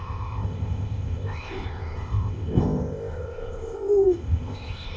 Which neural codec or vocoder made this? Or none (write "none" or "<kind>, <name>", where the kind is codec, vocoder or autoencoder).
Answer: codec, ZipCodec